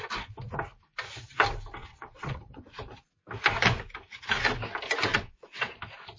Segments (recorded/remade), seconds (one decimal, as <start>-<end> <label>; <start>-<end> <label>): 0.0-1.8 recorded; 1.8-2.7 remade; 2.7-5.1 recorded; 5.1-5.7 remade; 5.7-6.2 recorded